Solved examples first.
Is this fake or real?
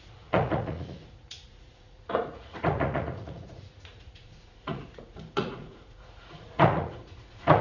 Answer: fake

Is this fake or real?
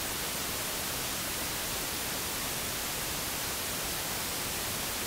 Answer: real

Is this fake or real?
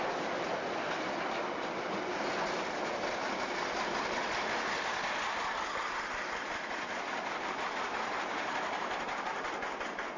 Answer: real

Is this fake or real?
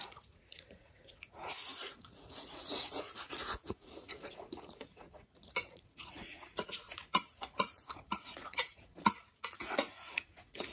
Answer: fake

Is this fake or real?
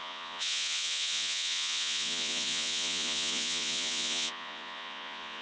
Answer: fake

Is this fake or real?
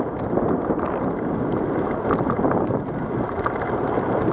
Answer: real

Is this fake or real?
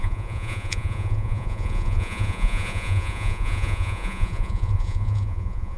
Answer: fake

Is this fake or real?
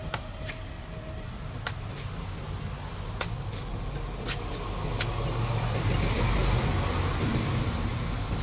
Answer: real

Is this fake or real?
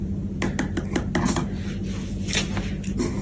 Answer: real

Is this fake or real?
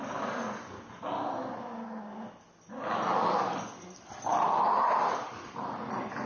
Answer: real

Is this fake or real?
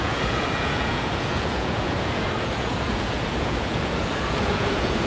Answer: fake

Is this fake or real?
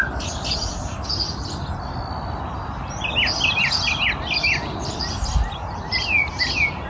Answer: real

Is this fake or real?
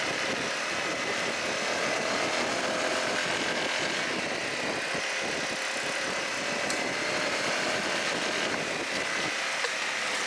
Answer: real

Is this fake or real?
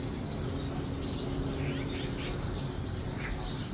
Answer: real